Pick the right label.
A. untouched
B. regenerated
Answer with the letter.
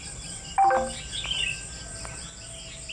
A